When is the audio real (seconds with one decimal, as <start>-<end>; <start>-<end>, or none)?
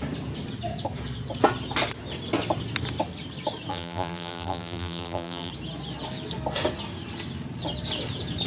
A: 0.0-3.7; 5.5-8.5